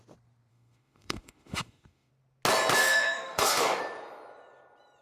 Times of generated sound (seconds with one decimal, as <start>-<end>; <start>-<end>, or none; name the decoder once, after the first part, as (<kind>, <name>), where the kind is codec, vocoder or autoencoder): 0.5-2.1 (autoencoder, DAC-VAE); 2.8-3.8